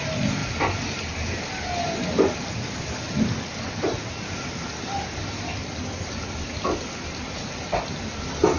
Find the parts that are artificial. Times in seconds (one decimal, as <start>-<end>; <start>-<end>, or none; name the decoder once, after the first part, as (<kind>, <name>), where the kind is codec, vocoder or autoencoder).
none